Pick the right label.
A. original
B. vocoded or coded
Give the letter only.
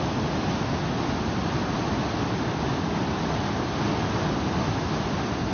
A